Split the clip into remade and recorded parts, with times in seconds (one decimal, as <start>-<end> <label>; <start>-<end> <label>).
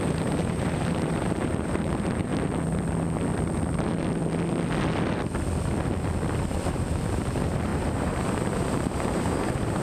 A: 0.0-2.3 remade; 2.3-6.7 recorded; 6.7-9.8 remade